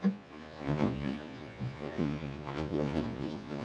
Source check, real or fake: fake